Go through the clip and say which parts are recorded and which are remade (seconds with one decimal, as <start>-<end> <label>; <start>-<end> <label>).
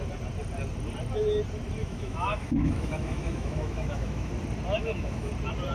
0.0-1.8 recorded; 1.8-4.3 remade; 4.3-4.8 recorded; 4.8-5.3 remade; 5.3-5.7 recorded